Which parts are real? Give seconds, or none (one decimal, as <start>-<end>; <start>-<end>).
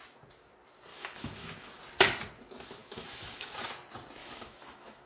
0.0-0.9; 1.8-2.8; 3.5-4.2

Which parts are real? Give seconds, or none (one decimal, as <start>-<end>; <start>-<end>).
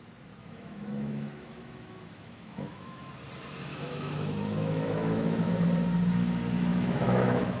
0.0-0.4; 3.1-3.7; 5.5-6.7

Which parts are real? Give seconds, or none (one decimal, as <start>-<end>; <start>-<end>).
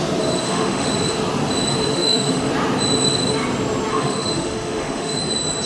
0.0-0.4; 0.9-1.9; 2.5-3.9; 5.2-5.7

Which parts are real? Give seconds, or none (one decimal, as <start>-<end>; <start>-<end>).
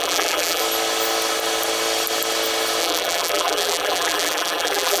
0.6-2.8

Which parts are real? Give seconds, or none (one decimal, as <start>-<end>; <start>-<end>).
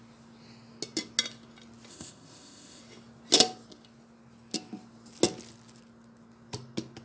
0.0-1.9; 2.8-7.0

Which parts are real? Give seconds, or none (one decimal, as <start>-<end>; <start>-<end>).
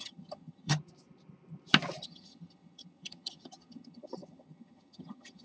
0.7-2.0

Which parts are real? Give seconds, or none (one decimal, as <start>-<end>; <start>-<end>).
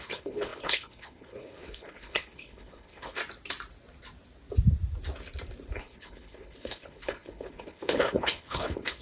3.2-5.8